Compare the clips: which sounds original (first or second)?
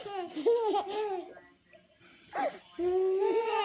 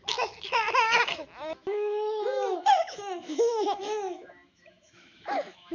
first